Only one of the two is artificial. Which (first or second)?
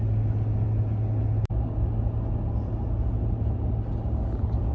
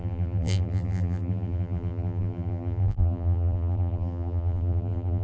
second